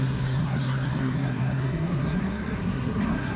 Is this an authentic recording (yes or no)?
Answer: no